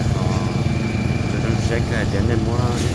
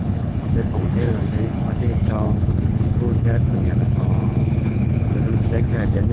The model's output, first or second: second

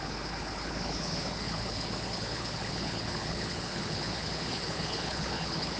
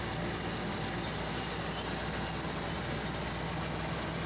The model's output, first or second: first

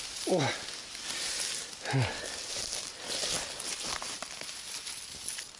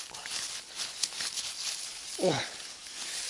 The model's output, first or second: second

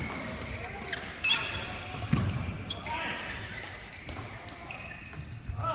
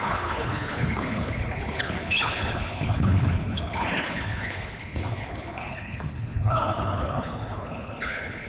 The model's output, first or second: second